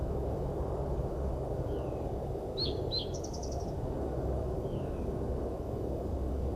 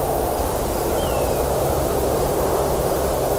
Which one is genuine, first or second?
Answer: second